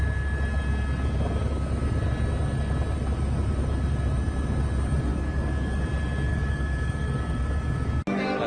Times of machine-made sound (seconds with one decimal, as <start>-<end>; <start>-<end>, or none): 5.1-5.8; 6.3-7.9